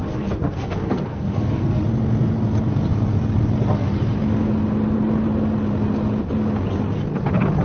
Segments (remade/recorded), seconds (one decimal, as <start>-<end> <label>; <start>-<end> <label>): 0.0-1.8 remade; 1.8-7.6 recorded